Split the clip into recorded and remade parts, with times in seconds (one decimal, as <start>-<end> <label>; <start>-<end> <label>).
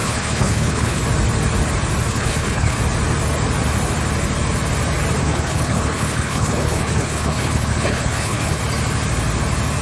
0.0-1.0 remade; 1.0-2.1 recorded; 2.1-2.8 remade; 2.8-5.2 recorded; 5.2-8.6 remade; 8.6-9.8 recorded